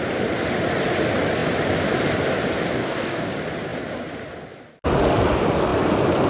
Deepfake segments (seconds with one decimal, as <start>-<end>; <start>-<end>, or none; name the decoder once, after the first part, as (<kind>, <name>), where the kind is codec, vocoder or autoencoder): 2.8-3.3 (codec, DAC)